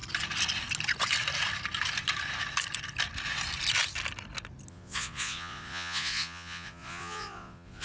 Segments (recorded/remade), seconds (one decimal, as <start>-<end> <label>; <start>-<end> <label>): 0.0-4.7 recorded; 4.7-7.8 remade

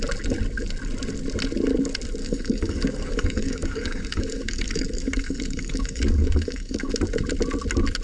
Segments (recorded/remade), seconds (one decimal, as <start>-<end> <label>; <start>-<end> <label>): 0.0-2.2 recorded; 2.2-6.9 remade; 6.9-8.0 recorded

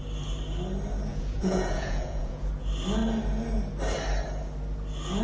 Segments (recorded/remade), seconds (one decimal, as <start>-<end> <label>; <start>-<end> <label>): 0.0-1.1 recorded; 1.1-2.5 remade; 2.5-5.2 recorded